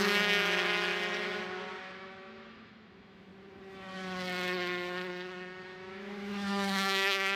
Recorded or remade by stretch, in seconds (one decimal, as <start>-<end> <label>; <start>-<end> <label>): 0.0-0.9 remade; 0.9-2.0 recorded; 2.0-3.3 remade; 3.3-5.1 recorded; 5.1-7.4 remade